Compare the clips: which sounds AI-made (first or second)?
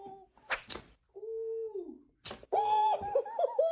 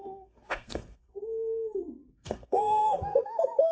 second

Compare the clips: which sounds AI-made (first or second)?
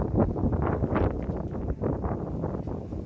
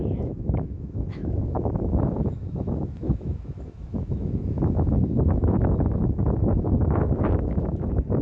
second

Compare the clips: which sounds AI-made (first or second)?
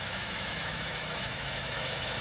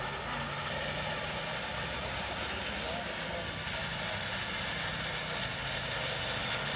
first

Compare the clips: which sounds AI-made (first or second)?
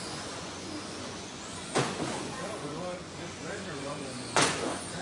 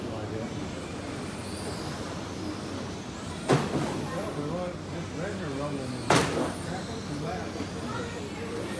first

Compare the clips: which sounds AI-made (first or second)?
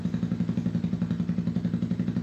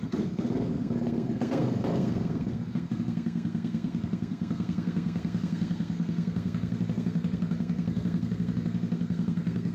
second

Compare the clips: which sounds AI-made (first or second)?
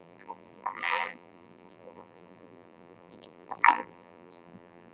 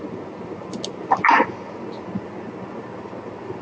first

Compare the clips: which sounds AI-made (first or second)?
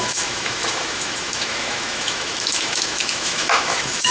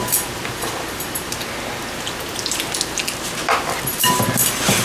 first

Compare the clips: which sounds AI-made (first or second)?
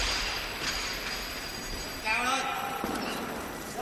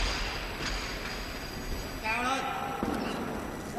first